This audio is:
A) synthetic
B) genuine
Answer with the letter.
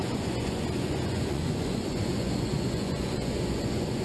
A